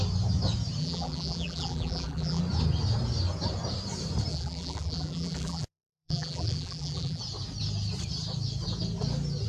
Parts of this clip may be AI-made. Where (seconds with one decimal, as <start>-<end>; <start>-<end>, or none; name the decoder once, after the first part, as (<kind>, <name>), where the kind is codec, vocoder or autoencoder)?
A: 0.8-2.4 (vocoder, BigVGAN v2); 4.3-7.2